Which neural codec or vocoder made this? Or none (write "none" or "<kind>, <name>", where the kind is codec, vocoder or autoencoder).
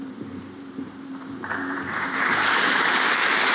vocoder, BigVGAN v2